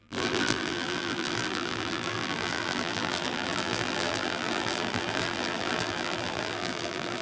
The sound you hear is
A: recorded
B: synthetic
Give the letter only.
B